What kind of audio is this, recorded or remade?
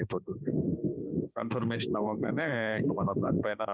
remade